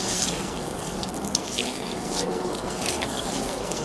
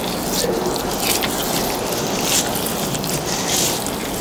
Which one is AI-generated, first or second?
first